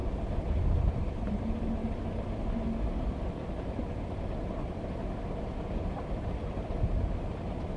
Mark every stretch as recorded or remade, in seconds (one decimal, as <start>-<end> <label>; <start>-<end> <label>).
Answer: 0.0-0.8 recorded; 0.8-1.8 remade; 1.8-3.3 recorded; 3.3-7.8 remade